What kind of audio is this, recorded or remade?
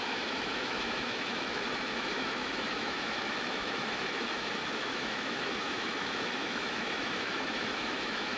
remade